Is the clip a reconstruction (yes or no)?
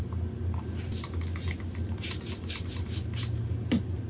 no